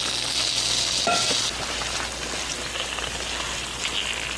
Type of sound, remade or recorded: recorded